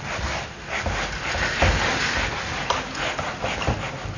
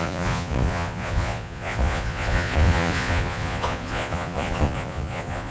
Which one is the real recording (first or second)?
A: first